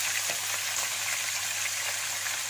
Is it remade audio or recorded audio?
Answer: recorded